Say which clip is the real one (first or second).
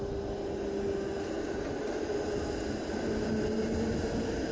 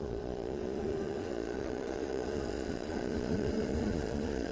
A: first